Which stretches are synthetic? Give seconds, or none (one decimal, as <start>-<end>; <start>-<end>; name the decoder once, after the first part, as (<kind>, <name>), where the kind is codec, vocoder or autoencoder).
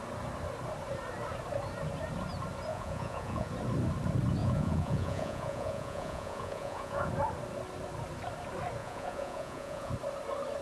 2.7-3.5 (vocoder, Vocos); 4.4-7.1; 8.8-9.9